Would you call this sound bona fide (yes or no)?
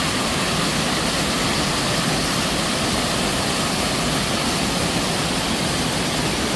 yes